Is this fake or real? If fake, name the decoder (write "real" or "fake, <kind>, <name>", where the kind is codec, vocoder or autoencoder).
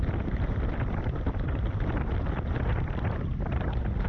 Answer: fake, vocoder, BigVGAN v2